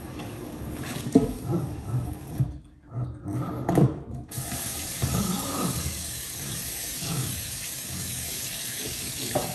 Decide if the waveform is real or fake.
fake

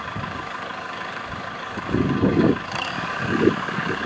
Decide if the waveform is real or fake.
fake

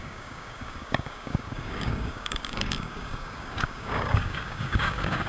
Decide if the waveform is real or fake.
fake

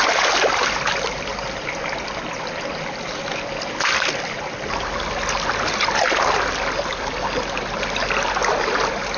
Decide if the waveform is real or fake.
real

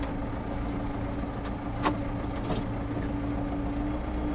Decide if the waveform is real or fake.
real